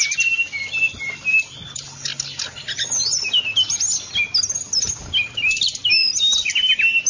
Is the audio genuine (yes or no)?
yes